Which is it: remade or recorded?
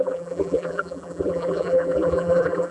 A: remade